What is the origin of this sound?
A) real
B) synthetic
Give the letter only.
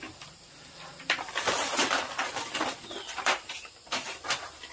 B